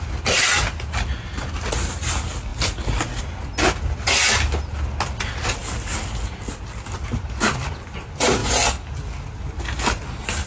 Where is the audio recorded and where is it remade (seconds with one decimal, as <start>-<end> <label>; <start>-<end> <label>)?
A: 0.0-10.5 recorded